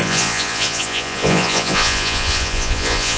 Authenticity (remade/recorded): remade